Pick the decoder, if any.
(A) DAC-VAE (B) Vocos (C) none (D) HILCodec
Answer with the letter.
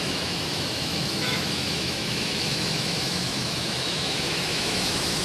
A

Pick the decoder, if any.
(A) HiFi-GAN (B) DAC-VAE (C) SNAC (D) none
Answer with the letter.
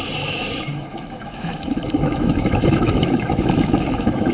B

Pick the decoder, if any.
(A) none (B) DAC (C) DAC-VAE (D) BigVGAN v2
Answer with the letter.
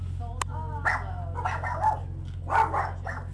A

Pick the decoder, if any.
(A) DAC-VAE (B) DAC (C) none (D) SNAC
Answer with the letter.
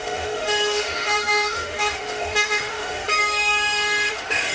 A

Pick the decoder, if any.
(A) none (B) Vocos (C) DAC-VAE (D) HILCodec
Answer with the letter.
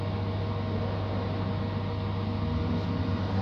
A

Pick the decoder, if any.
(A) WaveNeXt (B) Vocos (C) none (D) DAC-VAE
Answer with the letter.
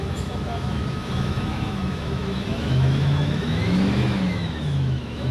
D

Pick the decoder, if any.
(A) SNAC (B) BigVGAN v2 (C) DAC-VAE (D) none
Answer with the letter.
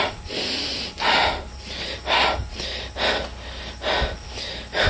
D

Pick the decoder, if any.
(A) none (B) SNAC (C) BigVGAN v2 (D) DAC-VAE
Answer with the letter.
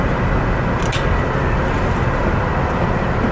A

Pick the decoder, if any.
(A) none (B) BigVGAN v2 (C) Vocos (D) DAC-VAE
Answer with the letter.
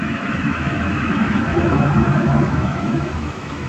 D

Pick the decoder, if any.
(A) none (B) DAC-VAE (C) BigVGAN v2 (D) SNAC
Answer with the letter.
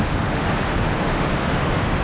B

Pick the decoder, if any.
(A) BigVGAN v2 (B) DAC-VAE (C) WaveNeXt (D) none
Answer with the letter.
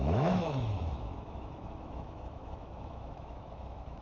B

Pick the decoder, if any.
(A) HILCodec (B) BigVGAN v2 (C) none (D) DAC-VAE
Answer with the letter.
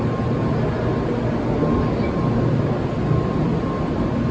C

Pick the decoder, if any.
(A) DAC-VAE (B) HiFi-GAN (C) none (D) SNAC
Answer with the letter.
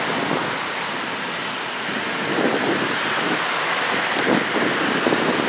C